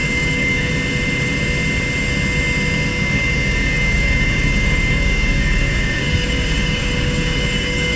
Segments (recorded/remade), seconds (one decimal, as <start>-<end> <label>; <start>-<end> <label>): 0.0-0.7 remade; 0.7-2.9 recorded; 2.9-8.0 remade